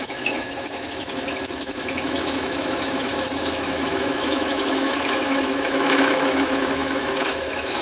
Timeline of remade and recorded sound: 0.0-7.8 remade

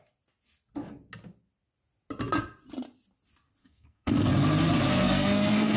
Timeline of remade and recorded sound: 0.0-3.6 recorded; 3.6-4.3 remade; 4.3-4.9 recorded; 4.9-5.8 remade

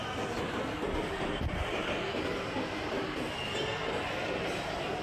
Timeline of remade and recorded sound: 0.0-5.0 recorded

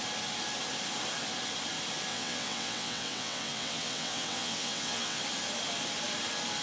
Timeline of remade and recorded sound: 0.0-2.1 recorded; 2.1-5.2 remade; 5.2-6.6 recorded

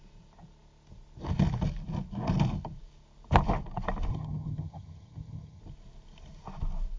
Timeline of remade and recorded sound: 0.0-4.1 recorded; 4.1-5.6 remade; 5.6-7.0 recorded